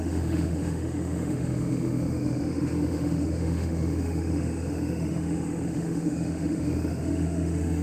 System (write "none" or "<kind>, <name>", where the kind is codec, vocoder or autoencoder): autoencoder, DAC-VAE